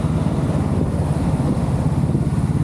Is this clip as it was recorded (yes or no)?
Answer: yes